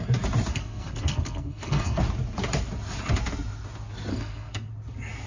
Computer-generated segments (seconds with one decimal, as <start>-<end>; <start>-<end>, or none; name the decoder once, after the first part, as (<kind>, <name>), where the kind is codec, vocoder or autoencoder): 0.5-2.0 (codec, SNAC); 4.1-4.7